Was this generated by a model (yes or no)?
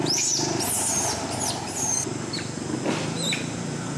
no